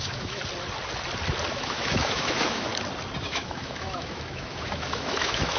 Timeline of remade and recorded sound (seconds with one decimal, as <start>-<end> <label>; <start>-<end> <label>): 0.0-0.4 remade; 0.4-1.5 recorded; 1.5-2.7 remade; 2.7-3.2 recorded; 3.2-5.6 remade